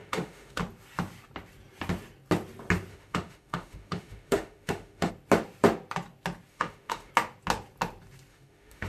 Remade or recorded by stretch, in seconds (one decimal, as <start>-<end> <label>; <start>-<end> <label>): 0.0-0.6 remade; 0.6-2.9 recorded; 2.9-5.1 remade; 5.1-6.5 recorded; 6.5-7.1 remade; 7.1-8.3 recorded; 8.3-8.9 remade